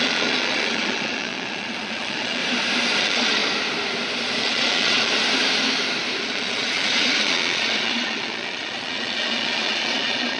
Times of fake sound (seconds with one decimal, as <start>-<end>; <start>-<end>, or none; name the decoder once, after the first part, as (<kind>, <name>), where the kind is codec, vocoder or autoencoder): 0.0-2.4 (vocoder, Vocos); 3.0-3.4; 4.4-5.1; 6.2-10.4